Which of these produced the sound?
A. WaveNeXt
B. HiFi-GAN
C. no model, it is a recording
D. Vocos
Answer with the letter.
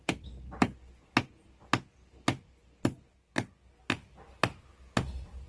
C